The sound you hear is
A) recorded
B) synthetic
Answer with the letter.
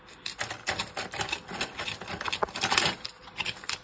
A